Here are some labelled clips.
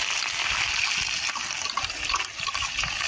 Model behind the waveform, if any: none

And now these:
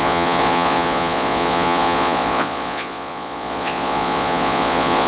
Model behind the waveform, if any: vocoder, Vocos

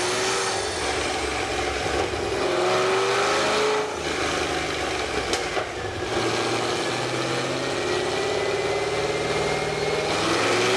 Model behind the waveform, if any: none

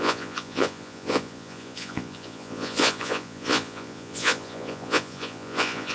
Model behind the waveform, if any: vocoder, Vocos